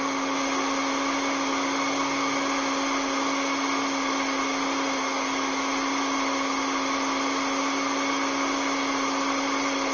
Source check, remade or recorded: recorded